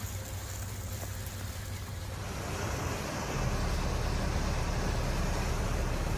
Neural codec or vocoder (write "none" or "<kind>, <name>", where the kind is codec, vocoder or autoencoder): none